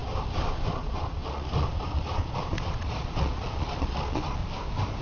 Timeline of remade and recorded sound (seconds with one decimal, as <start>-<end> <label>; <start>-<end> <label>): 0.0-0.7 recorded; 0.7-4.4 remade; 4.4-5.0 recorded